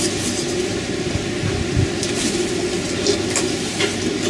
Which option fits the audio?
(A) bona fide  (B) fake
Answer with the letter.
A